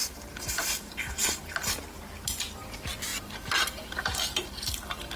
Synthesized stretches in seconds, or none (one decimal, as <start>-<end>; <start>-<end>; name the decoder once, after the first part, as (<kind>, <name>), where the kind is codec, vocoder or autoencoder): 0.0-1.7 (vocoder, BigVGAN v2); 3.1-5.2